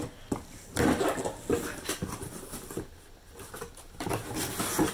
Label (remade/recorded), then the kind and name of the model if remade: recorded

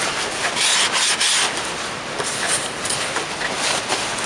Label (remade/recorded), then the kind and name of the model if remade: recorded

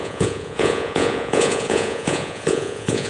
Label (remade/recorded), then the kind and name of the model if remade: remade, vocoder, Vocos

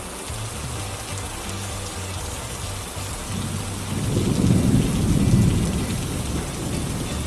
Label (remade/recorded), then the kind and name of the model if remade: recorded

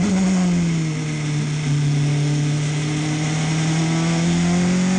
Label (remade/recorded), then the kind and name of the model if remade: recorded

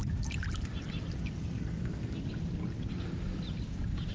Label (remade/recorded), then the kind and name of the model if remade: recorded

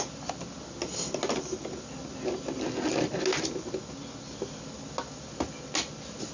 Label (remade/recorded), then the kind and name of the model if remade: recorded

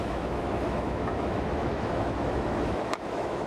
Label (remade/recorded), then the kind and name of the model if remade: remade, autoencoder, DAC-VAE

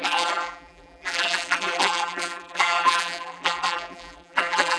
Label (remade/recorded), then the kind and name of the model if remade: remade, vocoder, BigVGAN v2